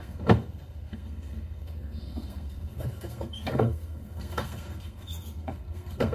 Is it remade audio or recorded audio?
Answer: remade